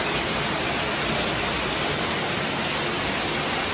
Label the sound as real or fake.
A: real